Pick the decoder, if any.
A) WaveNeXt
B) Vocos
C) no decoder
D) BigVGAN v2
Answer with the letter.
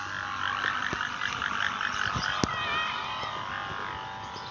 C